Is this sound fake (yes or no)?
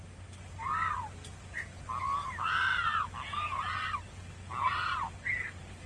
no